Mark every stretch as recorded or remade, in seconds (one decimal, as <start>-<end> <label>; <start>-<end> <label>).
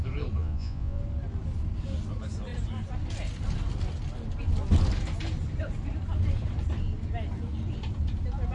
0.0-0.4 recorded; 0.4-1.0 remade; 1.0-8.5 recorded